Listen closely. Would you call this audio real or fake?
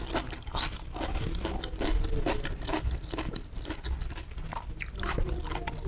real